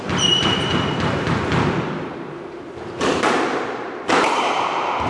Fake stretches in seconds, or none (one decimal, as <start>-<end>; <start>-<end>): 0.0-0.7; 1.8-5.1